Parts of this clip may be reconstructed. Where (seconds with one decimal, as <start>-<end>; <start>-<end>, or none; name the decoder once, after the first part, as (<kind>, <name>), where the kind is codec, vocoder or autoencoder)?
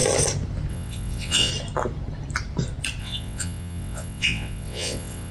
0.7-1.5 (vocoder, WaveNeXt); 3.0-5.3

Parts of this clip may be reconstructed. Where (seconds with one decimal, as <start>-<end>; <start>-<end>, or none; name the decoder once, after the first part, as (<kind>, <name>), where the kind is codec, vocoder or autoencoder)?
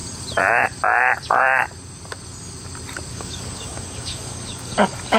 3.1-5.2 (codec, DAC)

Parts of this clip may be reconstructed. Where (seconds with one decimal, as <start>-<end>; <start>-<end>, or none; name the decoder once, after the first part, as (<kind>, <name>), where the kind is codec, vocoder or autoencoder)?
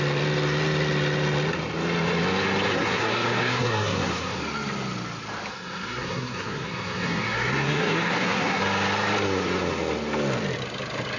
2.7-4.4 (codec, SNAC); 5.5-8.6